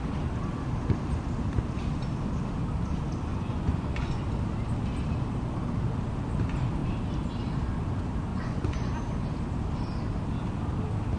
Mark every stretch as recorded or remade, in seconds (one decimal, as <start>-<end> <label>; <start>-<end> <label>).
0.0-3.3 recorded; 3.3-4.2 remade; 4.2-8.3 recorded; 8.3-8.9 remade; 8.9-11.2 recorded